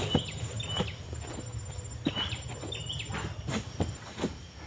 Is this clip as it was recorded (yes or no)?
yes